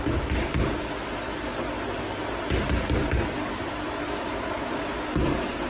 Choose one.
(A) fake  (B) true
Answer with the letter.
B